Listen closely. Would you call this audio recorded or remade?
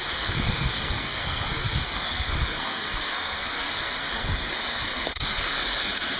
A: remade